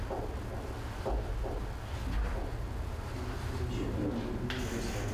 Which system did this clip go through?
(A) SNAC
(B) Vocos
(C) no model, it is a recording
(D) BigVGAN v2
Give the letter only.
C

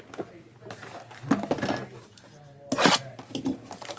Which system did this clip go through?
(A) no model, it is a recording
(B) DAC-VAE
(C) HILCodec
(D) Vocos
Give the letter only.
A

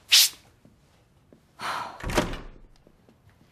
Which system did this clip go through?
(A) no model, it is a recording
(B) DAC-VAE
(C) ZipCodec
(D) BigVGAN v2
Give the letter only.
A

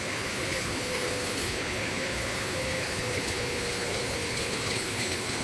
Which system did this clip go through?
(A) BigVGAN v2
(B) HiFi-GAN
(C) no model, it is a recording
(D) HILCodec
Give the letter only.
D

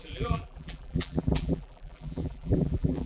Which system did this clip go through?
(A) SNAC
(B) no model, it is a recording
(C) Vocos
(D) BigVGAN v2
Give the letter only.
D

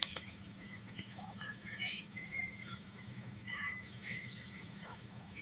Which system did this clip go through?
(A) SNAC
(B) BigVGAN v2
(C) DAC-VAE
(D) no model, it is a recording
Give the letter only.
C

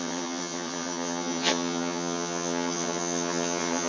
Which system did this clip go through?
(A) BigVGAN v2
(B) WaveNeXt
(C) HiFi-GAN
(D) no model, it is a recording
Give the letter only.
C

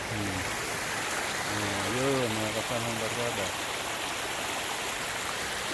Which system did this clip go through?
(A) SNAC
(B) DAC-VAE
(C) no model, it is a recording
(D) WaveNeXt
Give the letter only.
C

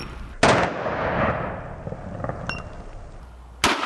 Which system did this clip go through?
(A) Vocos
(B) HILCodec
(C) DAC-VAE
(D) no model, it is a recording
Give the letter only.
D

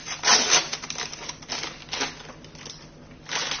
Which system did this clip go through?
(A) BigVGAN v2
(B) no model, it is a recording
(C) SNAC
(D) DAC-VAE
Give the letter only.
B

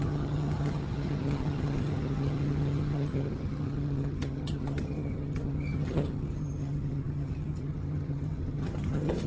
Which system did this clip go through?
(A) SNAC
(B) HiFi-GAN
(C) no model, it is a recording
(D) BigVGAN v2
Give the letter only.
B